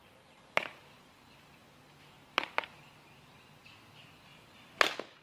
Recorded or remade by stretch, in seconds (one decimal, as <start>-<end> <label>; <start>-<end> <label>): 0.0-5.2 recorded

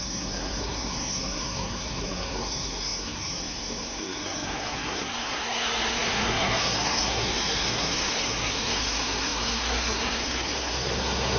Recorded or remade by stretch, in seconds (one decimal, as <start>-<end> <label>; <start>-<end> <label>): 0.0-11.4 remade